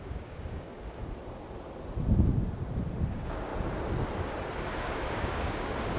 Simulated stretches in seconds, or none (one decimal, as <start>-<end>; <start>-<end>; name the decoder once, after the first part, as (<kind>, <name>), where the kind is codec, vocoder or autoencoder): 0.0-1.0 (codec, DAC); 3.1-3.5; 4.7-6.0